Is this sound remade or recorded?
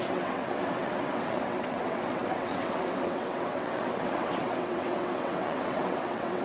remade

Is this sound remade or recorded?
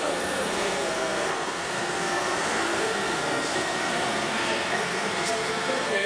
remade